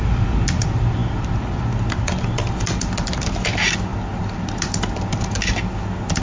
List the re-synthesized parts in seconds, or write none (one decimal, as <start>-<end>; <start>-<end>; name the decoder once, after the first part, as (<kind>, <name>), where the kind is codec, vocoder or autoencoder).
none